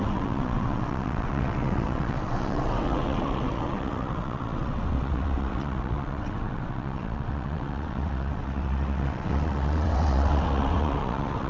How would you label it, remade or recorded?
remade